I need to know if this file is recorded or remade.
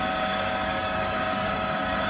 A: remade